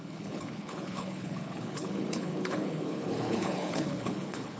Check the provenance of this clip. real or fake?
fake